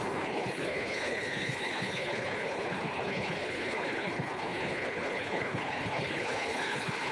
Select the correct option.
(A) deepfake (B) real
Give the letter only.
A